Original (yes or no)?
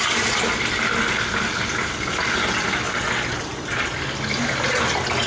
yes